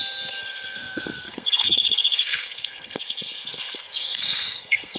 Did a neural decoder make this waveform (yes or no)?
yes